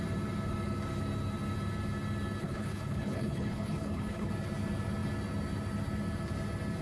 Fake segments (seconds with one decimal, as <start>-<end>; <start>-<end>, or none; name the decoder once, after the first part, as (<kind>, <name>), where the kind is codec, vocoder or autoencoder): 2.4-4.3 (codec, HILCodec)